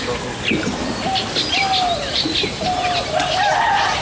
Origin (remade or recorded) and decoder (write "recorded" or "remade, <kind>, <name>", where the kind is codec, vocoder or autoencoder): recorded